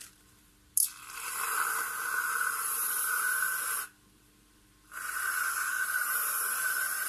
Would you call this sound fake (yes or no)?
yes